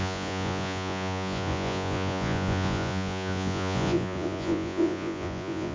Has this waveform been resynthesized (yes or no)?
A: yes